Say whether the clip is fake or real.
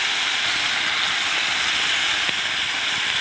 real